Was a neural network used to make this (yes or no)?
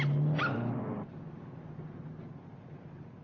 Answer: no